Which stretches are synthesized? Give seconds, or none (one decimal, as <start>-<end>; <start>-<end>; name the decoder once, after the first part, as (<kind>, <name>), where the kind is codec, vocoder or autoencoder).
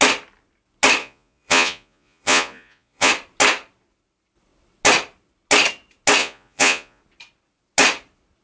1.0-3.1 (vocoder, Vocos); 6.2-7.0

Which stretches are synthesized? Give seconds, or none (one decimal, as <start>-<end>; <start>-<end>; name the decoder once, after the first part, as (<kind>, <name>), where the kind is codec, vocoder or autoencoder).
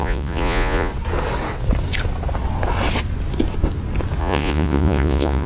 0.0-0.9 (vocoder, Vocos); 4.2-5.5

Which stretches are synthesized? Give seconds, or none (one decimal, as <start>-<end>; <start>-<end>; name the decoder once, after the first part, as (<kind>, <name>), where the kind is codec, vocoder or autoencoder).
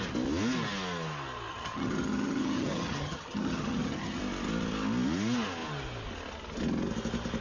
1.5-4.2 (vocoder, HiFi-GAN)